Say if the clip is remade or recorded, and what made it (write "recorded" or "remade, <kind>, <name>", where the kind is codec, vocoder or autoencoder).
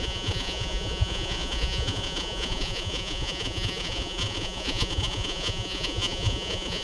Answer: remade, vocoder, Vocos